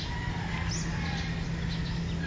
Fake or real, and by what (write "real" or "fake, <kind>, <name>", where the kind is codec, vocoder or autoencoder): real